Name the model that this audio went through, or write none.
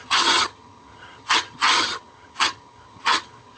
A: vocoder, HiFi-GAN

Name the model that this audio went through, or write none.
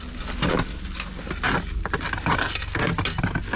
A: none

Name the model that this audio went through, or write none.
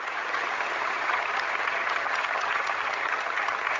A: vocoder, HiFi-GAN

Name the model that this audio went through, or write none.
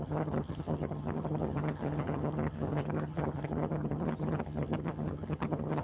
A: vocoder, HiFi-GAN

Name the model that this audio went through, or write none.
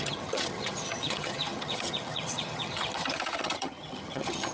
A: vocoder, HiFi-GAN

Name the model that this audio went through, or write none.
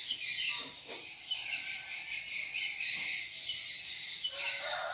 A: none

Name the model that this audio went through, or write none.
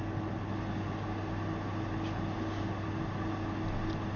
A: none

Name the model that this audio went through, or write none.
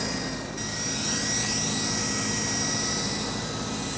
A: none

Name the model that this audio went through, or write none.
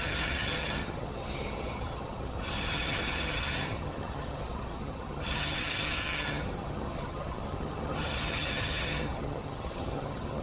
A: vocoder, HiFi-GAN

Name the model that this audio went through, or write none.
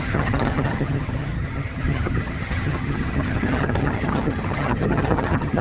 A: vocoder, HiFi-GAN